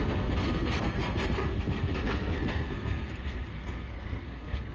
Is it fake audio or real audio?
fake